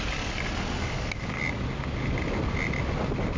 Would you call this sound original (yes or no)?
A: yes